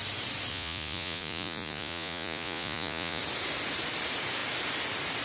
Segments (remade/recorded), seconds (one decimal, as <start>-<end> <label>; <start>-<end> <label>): 0.0-0.5 recorded; 0.5-3.2 remade; 3.2-5.2 recorded